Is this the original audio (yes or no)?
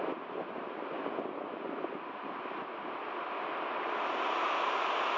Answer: yes